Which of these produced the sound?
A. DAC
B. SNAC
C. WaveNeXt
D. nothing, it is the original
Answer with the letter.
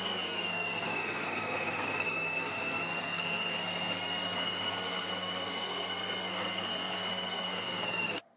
B